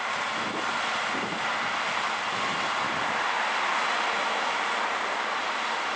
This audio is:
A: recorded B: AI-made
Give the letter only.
B